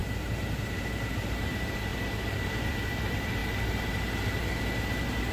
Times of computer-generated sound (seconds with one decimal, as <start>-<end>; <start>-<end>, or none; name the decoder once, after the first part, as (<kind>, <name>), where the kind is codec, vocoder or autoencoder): 1.4-3.4 (vocoder, BigVGAN v2)